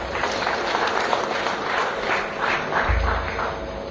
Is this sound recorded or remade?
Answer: recorded